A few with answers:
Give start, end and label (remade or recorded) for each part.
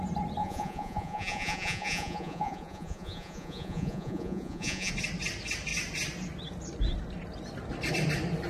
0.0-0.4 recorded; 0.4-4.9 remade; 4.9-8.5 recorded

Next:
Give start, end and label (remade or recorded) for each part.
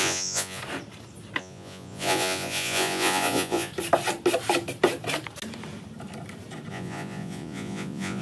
0.0-0.6 remade; 0.6-1.4 recorded; 1.4-3.7 remade; 3.7-6.7 recorded; 6.7-8.2 remade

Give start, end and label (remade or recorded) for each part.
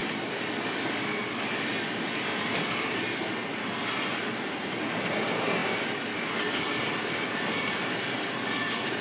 0.0-9.0 recorded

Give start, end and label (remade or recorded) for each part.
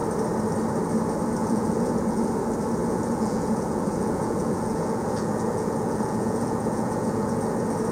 0.0-1.4 recorded; 1.4-2.3 remade; 2.3-2.8 recorded; 2.8-7.5 remade; 7.5-7.9 recorded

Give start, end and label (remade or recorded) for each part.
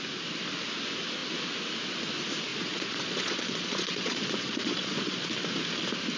0.0-2.5 recorded; 2.5-5.3 remade; 5.3-6.2 recorded